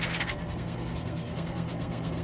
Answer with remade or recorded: remade